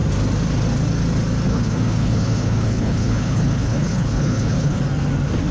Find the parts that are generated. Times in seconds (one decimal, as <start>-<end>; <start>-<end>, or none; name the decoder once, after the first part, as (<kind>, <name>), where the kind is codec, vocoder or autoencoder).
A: 1.5-4.8 (codec, HILCodec)